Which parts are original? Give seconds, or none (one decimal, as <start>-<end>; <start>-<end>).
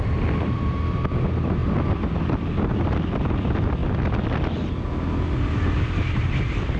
1.6-2.7; 3.8-5.5